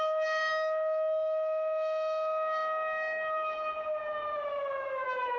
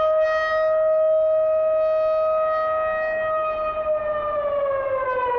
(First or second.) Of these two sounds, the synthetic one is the first